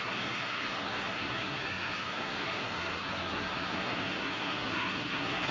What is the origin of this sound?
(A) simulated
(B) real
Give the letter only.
A